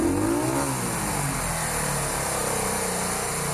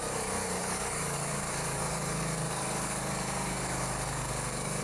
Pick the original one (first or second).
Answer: first